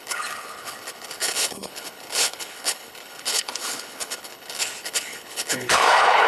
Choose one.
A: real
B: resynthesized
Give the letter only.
B